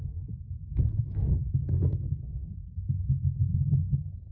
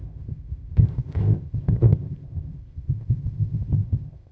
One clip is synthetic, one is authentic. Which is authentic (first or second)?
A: first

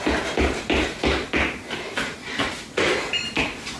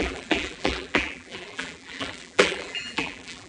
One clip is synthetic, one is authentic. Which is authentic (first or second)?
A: first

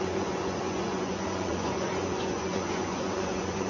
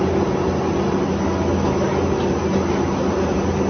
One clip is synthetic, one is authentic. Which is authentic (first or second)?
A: second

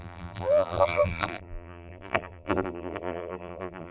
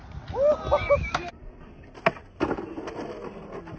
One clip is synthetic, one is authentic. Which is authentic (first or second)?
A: second